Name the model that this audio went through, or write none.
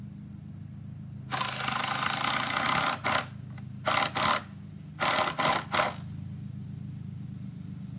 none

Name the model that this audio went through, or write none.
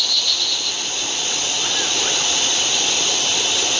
none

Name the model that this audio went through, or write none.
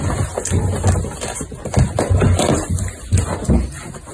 none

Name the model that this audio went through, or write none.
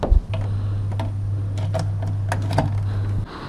none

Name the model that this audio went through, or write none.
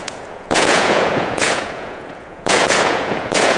vocoder, Vocos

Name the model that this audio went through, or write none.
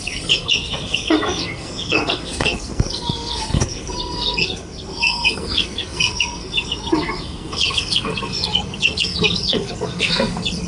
codec, SNAC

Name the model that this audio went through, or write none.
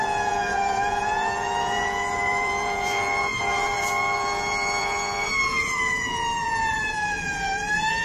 vocoder, Vocos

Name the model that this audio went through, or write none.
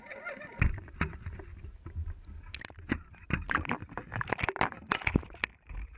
none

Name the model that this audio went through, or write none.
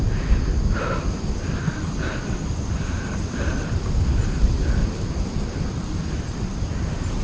none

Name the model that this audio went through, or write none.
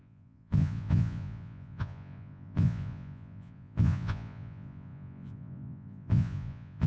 vocoder, Vocos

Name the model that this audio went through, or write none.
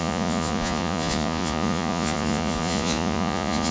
vocoder, Vocos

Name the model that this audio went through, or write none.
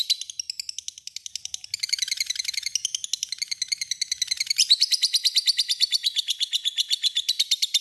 none